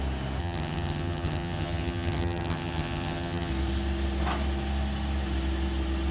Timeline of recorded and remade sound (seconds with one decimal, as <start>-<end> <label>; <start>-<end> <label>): 0.0-0.4 recorded; 0.4-3.5 remade; 3.5-6.1 recorded